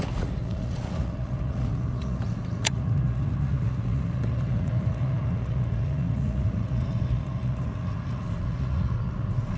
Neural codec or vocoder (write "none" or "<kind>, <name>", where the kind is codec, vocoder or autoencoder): vocoder, Vocos